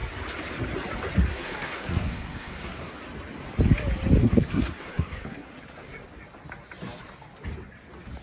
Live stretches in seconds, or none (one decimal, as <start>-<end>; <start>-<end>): 0.0-1.3; 2.9-4.2; 5.5-8.2